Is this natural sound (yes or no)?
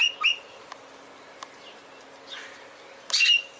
yes